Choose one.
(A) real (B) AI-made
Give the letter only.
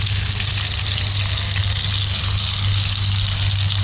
A